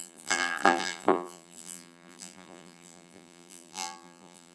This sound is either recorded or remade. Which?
remade